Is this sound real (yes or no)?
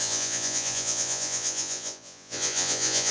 no